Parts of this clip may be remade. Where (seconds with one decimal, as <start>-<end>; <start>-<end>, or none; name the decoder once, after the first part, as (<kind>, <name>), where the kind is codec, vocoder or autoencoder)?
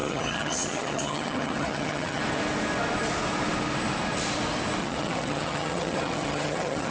0.0-2.2 (vocoder, HiFi-GAN); 4.8-6.9